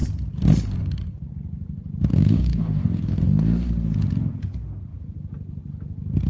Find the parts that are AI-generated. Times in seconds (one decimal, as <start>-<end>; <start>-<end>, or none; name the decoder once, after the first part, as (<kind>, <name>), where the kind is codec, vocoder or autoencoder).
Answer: 2.1-3.7 (codec, DAC)